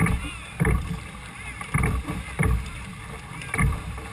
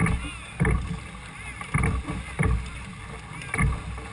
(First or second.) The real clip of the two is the second